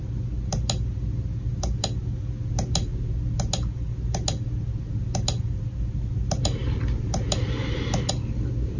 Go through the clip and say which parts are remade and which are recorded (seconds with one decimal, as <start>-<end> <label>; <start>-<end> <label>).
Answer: 0.0-8.8 recorded